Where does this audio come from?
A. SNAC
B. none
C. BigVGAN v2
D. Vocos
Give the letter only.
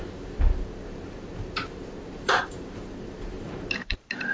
C